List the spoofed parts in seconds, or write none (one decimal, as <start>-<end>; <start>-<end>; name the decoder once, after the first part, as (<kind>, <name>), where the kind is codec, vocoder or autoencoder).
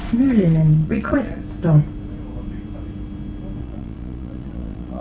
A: 0.0-1.4 (vocoder, Vocos); 3.6-5.0